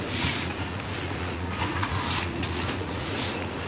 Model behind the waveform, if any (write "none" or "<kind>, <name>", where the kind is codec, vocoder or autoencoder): vocoder, Vocos